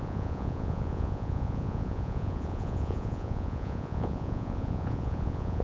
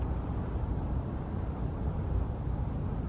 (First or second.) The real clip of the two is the second